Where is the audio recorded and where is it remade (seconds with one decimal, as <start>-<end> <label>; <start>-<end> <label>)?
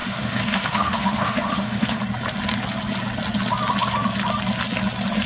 0.0-2.0 remade; 2.0-5.3 recorded